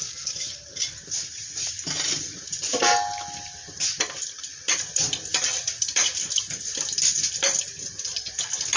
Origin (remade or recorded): recorded